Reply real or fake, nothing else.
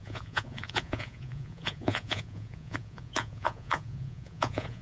fake